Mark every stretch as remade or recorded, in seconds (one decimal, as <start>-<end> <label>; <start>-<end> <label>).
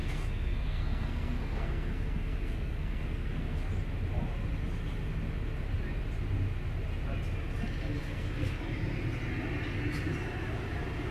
0.0-3.7 remade; 3.7-8.0 recorded; 8.0-8.6 remade; 8.6-11.1 recorded